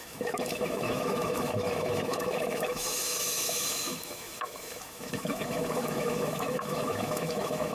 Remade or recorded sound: remade